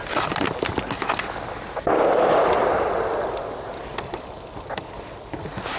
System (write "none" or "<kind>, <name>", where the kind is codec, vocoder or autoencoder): none